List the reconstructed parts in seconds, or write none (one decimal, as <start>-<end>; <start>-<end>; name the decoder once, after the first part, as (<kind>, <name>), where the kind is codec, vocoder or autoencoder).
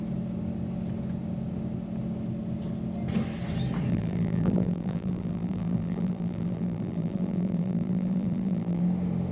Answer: 3.9-8.8 (vocoder, BigVGAN v2)